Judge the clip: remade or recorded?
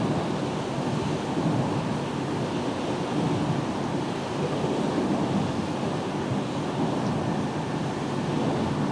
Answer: recorded